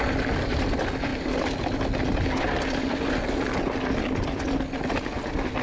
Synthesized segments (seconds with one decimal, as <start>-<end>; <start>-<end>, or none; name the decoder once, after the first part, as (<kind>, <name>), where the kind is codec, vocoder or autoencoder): none